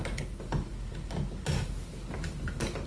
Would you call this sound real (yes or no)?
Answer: yes